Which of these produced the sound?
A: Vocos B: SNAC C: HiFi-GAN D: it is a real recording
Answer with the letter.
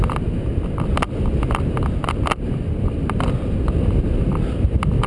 D